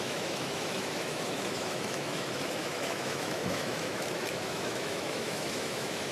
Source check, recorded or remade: remade